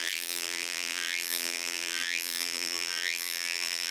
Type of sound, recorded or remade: remade